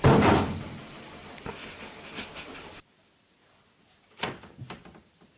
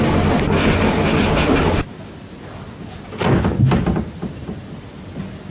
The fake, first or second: first